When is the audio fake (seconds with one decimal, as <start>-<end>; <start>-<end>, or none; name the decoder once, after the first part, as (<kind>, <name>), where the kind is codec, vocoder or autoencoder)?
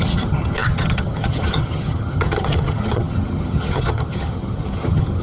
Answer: 0.0-5.2 (vocoder, HiFi-GAN)